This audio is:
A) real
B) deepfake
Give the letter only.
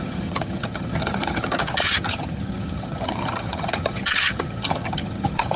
B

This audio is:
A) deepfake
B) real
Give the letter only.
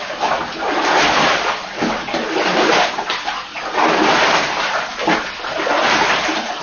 B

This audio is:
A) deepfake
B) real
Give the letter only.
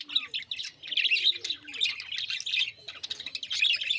B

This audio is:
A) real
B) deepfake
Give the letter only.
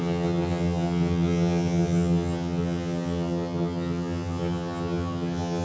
B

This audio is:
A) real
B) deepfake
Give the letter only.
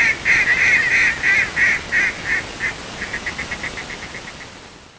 A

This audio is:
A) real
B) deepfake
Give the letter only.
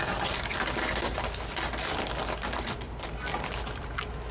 A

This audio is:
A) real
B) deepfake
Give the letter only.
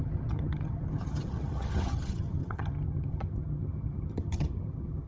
B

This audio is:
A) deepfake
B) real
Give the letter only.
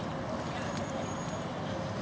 B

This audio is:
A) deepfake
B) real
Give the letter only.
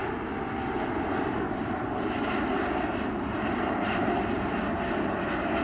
B